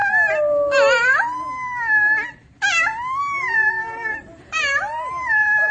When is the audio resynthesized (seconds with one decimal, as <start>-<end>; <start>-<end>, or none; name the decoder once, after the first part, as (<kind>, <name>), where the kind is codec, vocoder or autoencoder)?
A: 3.4-5.7 (vocoder, BigVGAN v2)